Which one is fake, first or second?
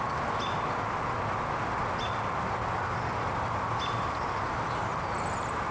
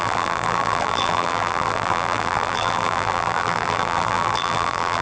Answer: second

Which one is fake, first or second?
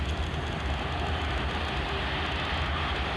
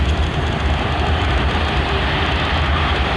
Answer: second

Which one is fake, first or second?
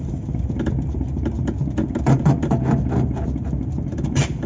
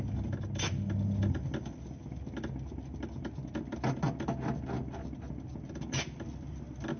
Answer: first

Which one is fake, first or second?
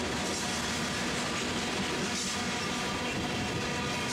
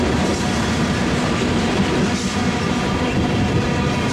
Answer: second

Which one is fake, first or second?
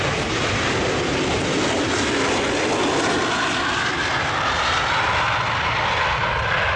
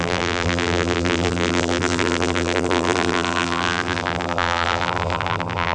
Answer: second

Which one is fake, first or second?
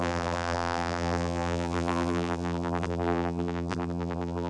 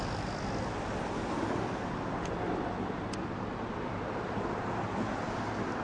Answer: first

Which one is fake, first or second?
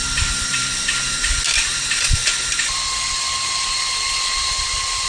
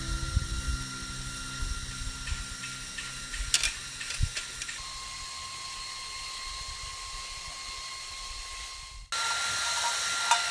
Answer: first